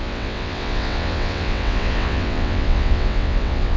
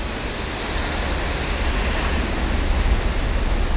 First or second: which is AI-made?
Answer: first